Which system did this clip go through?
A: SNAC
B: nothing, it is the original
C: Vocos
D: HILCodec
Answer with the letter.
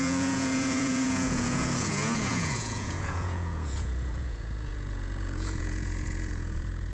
C